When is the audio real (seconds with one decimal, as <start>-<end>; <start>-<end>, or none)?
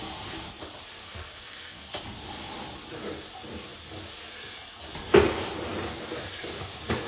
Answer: 0.0-1.0; 1.9-7.1